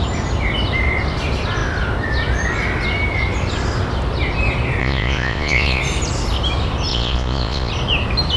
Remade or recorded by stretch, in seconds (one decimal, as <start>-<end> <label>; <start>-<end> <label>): 0.0-4.8 recorded; 4.8-5.8 remade; 5.8-6.9 recorded; 6.9-7.7 remade; 7.7-8.4 recorded